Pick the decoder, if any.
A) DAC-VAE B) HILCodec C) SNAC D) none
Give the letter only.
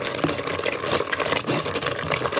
D